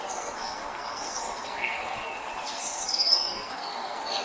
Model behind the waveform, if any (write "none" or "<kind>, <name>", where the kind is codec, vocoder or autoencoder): codec, SNAC